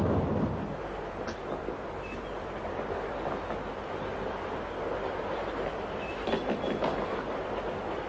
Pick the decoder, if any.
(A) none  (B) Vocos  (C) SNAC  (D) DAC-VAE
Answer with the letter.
A